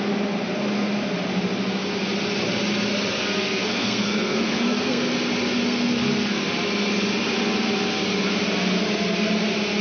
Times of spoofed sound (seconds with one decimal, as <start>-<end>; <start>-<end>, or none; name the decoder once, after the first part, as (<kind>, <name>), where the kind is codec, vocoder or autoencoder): 3.2-5.0 (codec, SNAC); 5.6-6.4